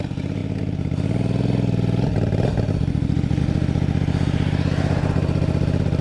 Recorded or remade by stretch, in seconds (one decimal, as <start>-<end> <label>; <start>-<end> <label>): 0.0-6.0 recorded